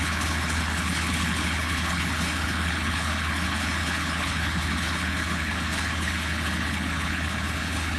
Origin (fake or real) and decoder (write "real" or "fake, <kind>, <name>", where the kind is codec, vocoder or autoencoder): fake, codec, HILCodec